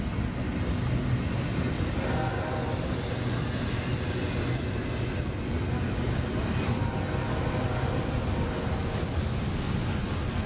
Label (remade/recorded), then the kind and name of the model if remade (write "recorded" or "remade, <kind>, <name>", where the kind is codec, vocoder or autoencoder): recorded